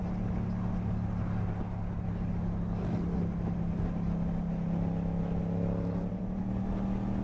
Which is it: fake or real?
real